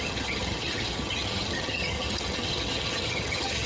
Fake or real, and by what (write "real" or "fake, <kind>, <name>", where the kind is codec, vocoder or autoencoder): fake, vocoder, HiFi-GAN